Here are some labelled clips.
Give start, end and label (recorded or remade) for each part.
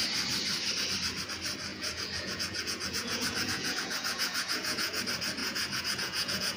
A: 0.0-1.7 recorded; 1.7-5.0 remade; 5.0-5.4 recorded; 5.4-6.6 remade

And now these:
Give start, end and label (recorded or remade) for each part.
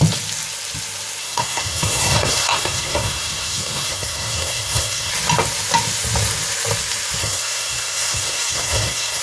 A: 0.0-1.2 recorded; 1.2-5.1 remade; 5.1-7.2 recorded; 7.2-9.2 remade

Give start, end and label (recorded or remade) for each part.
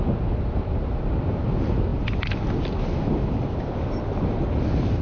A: 0.0-5.0 recorded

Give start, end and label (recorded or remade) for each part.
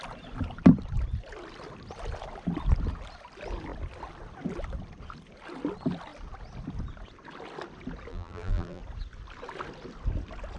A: 0.0-8.1 recorded; 8.1-8.8 remade; 8.8-10.6 recorded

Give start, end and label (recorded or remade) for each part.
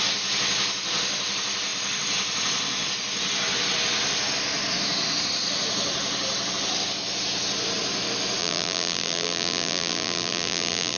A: 0.0-8.4 recorded; 8.4-11.0 remade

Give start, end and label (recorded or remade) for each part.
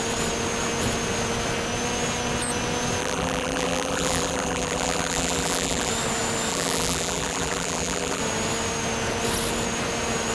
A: 0.0-3.0 recorded; 3.0-5.9 remade; 5.9-6.5 recorded; 6.5-8.2 remade; 8.2-10.3 recorded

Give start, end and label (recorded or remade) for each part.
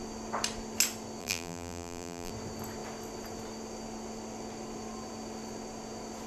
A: 0.0-1.2 recorded; 1.2-2.3 remade; 2.3-6.3 recorded